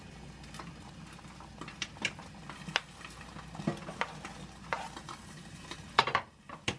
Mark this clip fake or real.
real